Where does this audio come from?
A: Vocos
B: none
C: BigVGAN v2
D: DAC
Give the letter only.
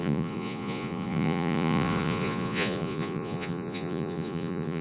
A